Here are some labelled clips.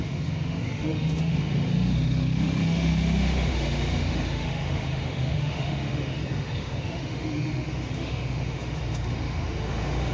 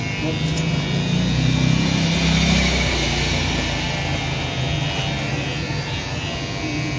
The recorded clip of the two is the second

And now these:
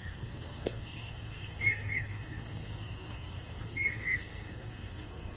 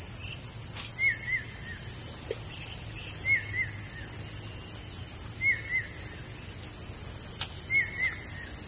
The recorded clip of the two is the second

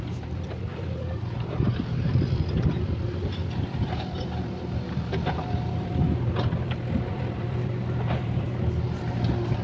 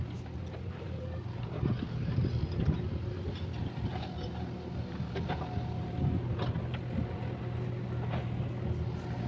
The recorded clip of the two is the second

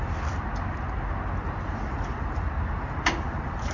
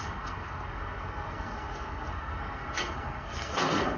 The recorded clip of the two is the first